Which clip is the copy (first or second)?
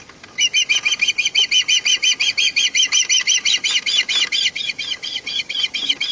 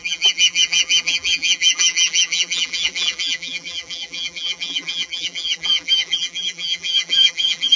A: second